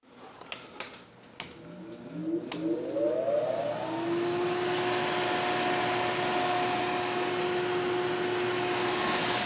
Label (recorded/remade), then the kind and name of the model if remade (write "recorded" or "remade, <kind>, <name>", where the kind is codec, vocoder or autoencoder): recorded